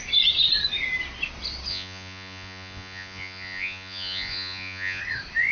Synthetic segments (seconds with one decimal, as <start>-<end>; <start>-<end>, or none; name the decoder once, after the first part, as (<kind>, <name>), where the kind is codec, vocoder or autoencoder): 1.7-5.0 (vocoder, Vocos)